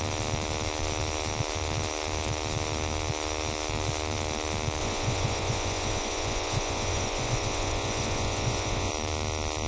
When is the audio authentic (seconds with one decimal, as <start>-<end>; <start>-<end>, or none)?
0.0-4.8; 8.9-9.7